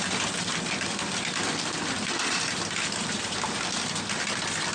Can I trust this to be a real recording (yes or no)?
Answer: yes